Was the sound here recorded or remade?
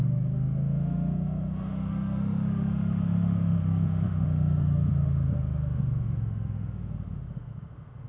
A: remade